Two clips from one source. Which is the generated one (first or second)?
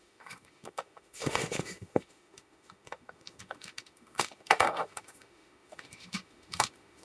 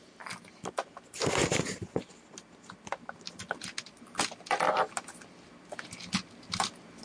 first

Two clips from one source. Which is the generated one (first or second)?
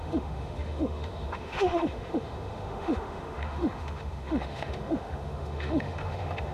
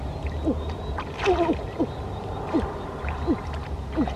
first